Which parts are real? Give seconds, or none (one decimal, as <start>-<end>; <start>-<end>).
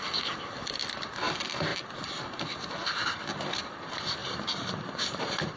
0.0-4.2